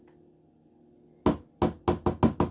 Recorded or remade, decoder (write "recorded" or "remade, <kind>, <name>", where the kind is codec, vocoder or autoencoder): recorded